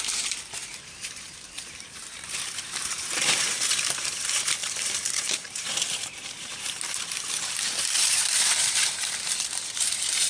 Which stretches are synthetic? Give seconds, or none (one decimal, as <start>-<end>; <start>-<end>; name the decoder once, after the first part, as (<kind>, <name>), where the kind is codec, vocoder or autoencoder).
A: 0.0-10.3 (vocoder, BigVGAN v2)